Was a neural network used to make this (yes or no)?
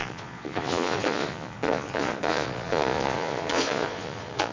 yes